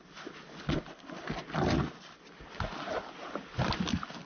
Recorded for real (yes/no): yes